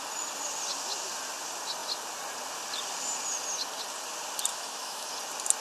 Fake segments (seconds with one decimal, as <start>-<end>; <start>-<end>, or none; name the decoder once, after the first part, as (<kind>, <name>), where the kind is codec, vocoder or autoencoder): 4.5-5.1 (autoencoder, DAC-VAE)